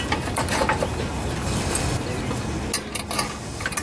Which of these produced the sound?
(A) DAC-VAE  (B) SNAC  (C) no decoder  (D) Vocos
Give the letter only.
C